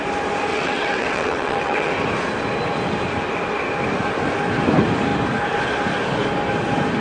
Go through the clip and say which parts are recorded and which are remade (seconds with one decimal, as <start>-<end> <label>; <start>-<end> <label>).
0.0-0.5 recorded; 0.5-1.9 remade; 1.9-7.0 recorded